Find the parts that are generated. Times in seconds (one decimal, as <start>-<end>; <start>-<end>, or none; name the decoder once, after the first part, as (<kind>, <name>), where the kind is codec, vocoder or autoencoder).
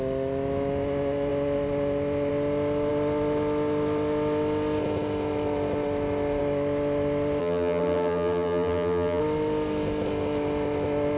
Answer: 7.4-9.2 (vocoder, BigVGAN v2)